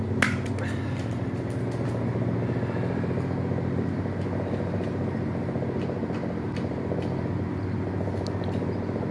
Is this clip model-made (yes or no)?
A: no